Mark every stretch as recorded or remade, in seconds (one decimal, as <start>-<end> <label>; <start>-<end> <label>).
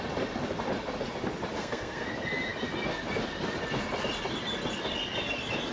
0.0-1.6 recorded; 1.6-2.1 remade; 2.1-5.7 recorded